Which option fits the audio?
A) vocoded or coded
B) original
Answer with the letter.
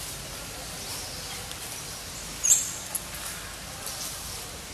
B